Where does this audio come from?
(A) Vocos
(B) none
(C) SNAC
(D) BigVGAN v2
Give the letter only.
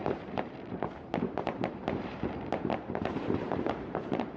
D